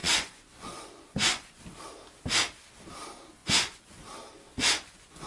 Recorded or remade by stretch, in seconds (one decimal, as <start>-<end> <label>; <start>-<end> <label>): 0.0-1.6 remade; 1.6-3.4 recorded; 3.4-4.0 remade; 4.0-4.5 recorded; 4.5-5.3 remade